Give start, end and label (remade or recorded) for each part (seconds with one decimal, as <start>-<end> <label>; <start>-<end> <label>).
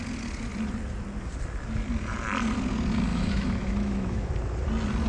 0.0-3.1 recorded; 3.1-4.3 remade; 4.3-5.1 recorded